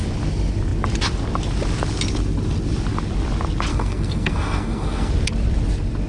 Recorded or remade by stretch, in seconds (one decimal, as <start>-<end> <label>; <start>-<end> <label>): 0.0-3.7 recorded; 3.7-5.1 remade; 5.1-6.1 recorded